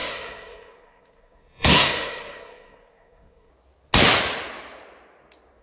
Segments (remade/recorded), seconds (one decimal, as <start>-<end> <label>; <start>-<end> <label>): 0.0-3.5 remade; 3.5-5.6 recorded